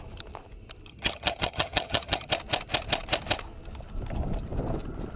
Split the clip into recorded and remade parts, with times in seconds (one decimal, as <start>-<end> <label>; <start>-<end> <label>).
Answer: 0.0-0.9 recorded; 0.9-2.3 remade; 2.3-5.2 recorded